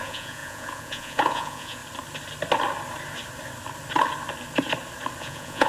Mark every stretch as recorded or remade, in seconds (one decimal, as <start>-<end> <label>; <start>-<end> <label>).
0.0-1.8 remade; 1.8-5.2 recorded; 5.2-5.7 remade